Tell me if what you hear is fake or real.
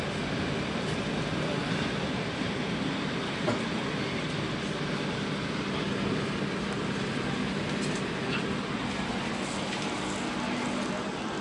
real